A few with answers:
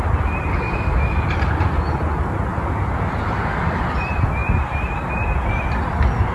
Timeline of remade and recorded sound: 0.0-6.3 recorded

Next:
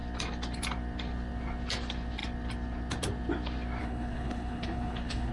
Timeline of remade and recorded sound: 0.0-3.8 recorded; 3.8-5.3 remade

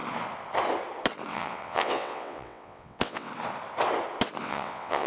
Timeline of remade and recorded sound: 0.0-1.3 recorded; 1.3-3.3 remade; 3.3-4.4 recorded; 4.4-5.1 remade

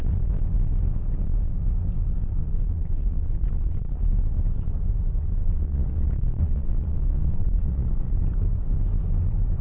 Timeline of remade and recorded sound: 0.0-2.4 recorded; 2.4-4.1 remade; 4.1-5.4 recorded; 5.4-8.2 remade; 8.2-9.6 recorded

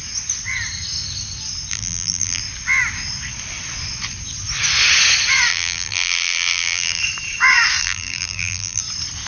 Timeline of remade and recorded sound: 0.0-1.7 recorded; 1.7-2.4 remade; 2.4-5.5 recorded; 5.5-7.0 remade; 7.0-7.8 recorded; 7.8-8.8 remade; 8.8-9.3 recorded

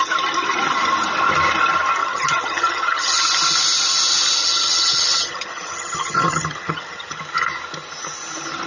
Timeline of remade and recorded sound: 0.0-2.0 recorded; 2.0-3.2 remade; 3.2-4.4 recorded; 4.4-7.2 remade; 7.2-8.7 recorded